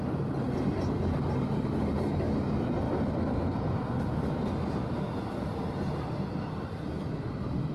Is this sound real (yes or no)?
yes